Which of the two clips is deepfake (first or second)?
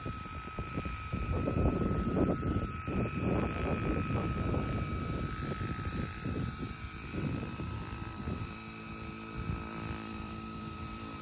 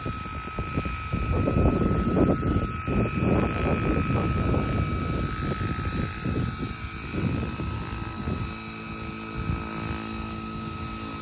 first